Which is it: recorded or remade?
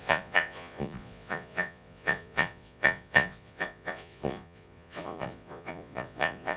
remade